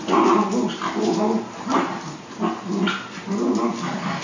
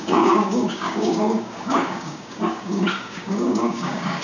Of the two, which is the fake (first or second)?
second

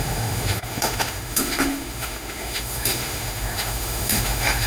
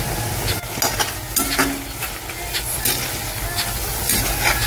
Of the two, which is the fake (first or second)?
first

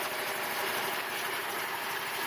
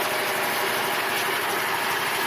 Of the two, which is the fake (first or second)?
first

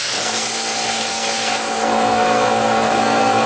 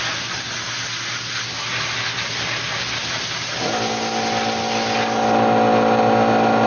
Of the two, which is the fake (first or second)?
first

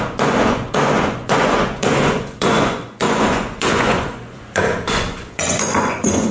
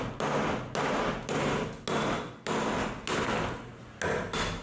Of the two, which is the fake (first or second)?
first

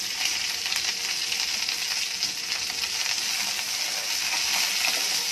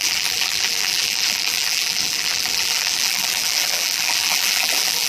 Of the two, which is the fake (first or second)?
second